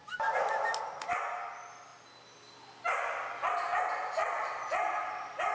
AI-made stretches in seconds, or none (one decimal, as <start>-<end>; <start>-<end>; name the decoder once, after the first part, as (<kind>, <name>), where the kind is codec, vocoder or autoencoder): none